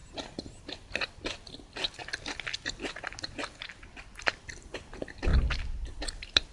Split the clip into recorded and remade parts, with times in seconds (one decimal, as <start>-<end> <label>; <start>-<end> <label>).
0.0-0.6 recorded; 0.6-2.0 remade; 2.0-3.9 recorded; 3.9-5.3 remade; 5.3-6.0 recorded; 6.0-6.5 remade